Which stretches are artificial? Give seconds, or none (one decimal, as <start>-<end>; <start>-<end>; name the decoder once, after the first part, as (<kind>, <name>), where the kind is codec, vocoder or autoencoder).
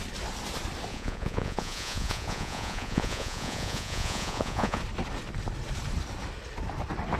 0.9-4.8 (vocoder, Vocos)